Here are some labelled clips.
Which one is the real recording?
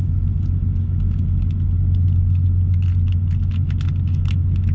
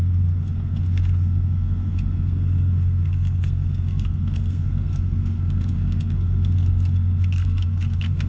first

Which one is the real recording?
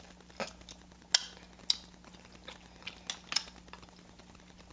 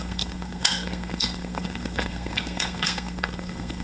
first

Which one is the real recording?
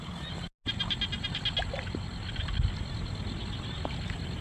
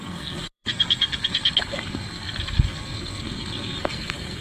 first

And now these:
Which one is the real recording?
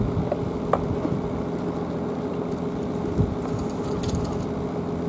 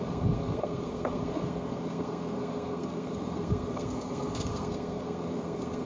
first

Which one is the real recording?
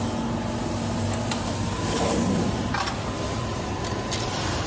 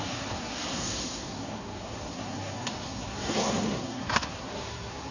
first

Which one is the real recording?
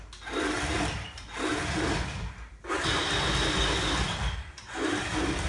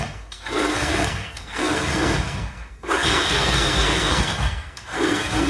first